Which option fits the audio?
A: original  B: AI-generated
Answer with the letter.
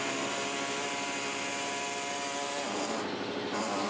A